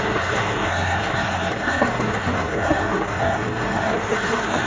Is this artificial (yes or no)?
yes